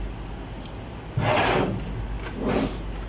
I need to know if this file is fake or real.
real